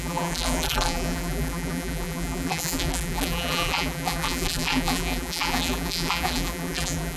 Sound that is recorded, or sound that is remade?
remade